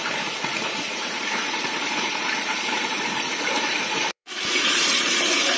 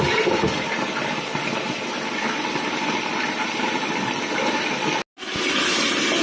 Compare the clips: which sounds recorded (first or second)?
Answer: second